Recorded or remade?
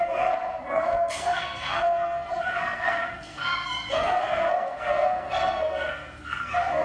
remade